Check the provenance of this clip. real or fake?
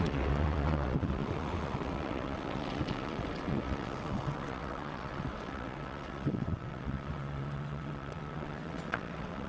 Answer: fake